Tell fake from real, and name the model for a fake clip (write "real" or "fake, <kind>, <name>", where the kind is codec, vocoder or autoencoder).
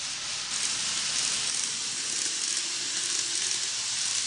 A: real